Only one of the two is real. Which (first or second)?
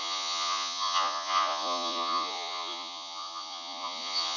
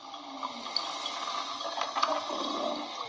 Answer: second